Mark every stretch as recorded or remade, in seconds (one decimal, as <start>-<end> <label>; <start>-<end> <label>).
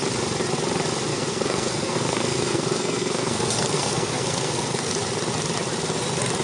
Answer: 0.0-1.1 recorded; 1.1-4.9 remade; 4.9-6.4 recorded